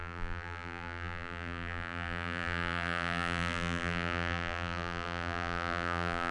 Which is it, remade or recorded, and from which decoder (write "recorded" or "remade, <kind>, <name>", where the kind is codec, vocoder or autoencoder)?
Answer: remade, vocoder, BigVGAN v2